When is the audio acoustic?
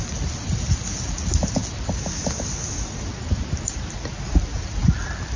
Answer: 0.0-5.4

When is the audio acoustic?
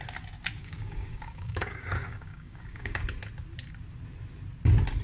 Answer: 0.0-0.6; 3.0-5.0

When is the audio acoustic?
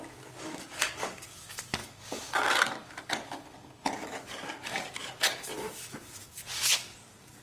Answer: none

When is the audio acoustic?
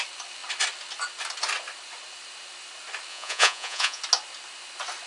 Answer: 0.0-3.1; 4.0-5.1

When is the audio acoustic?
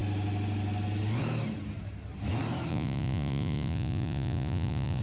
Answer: 0.0-2.7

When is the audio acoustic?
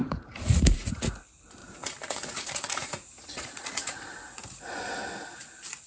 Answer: 1.2-1.6; 4.0-5.9